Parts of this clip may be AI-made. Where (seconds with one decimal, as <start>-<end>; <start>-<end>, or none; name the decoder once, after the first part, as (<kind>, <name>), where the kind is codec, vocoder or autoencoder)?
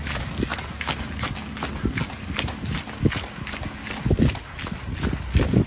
none